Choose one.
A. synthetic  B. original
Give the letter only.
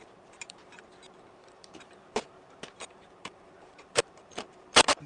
A